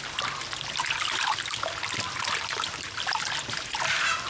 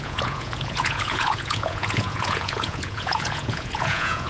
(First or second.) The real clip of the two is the first